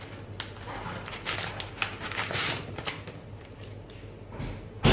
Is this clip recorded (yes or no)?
yes